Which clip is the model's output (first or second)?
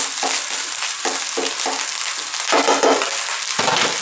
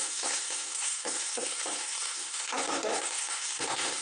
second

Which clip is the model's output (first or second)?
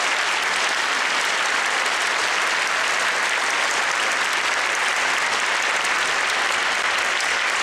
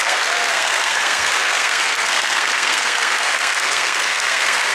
second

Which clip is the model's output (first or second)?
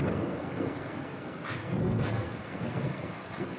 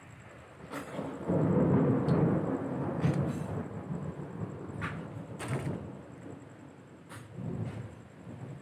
first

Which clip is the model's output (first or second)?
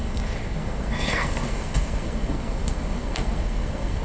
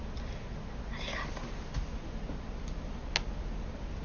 first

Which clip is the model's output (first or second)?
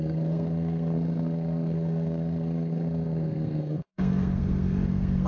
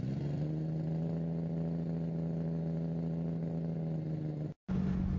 first